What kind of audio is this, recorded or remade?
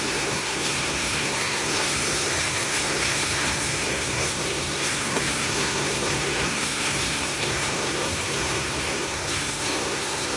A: remade